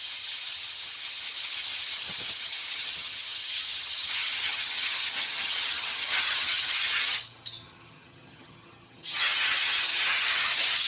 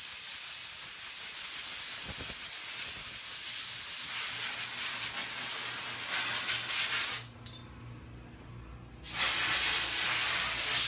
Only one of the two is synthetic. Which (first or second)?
first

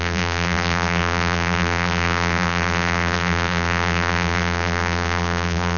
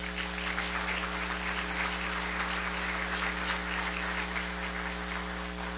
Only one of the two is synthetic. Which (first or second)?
first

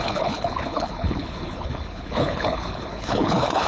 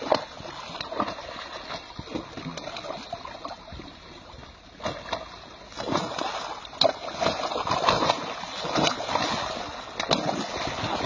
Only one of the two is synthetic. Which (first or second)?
first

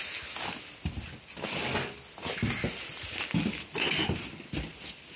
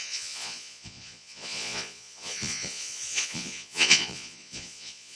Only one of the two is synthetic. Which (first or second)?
second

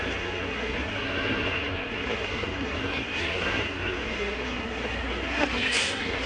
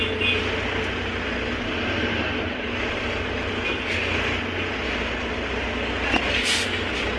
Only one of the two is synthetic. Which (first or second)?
first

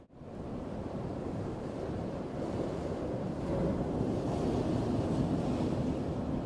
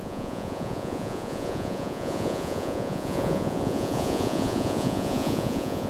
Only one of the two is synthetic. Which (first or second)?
second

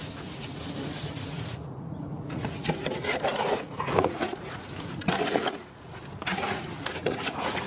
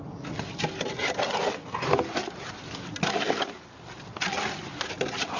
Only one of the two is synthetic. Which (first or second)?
first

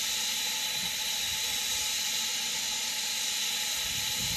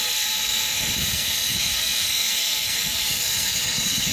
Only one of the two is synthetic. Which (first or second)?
second